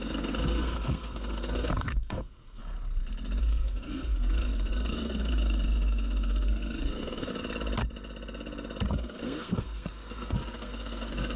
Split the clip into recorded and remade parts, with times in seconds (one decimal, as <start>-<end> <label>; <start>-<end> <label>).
0.0-2.6 remade; 2.6-3.4 recorded; 3.4-7.3 remade; 7.3-8.9 recorded; 8.9-11.4 remade